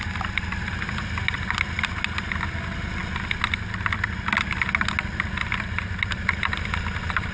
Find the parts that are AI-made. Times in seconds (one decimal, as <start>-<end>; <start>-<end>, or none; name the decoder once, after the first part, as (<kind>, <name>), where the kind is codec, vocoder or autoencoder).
none